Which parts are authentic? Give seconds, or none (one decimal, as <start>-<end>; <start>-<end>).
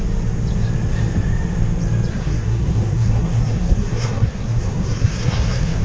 0.0-2.1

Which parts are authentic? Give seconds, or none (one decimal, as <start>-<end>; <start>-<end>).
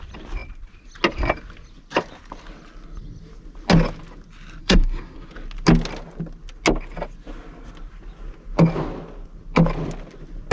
0.0-4.6; 5.3-10.5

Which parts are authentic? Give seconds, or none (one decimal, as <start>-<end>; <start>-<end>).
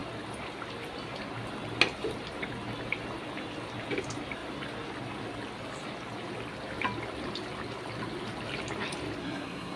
0.0-9.2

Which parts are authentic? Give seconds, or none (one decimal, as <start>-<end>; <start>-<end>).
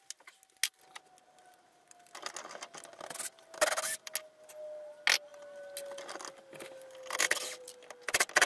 0.0-8.5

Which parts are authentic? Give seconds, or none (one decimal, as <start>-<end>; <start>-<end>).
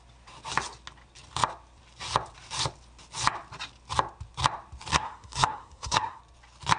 0.0-4.9; 6.2-6.8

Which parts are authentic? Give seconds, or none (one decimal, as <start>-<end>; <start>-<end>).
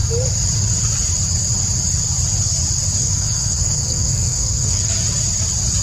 0.0-3.0; 4.9-5.8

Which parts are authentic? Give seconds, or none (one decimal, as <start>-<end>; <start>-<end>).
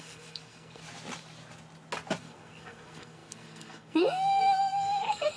0.8-2.2